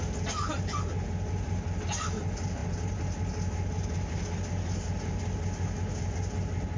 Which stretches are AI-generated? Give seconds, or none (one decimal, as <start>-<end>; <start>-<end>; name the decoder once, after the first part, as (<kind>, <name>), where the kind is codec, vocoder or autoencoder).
none